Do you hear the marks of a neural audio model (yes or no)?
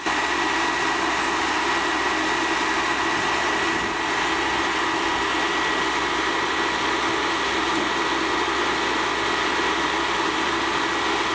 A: no